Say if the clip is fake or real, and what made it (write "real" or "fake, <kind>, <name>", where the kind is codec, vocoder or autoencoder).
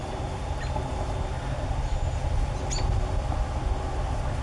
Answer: real